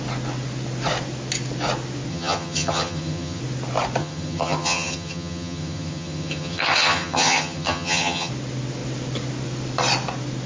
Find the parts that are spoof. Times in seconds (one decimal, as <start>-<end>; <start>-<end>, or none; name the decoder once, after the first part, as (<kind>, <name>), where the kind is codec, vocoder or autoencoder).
2.1-3.4 (vocoder, HiFi-GAN); 4.0-8.3